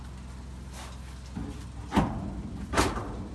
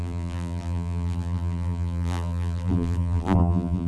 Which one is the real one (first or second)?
first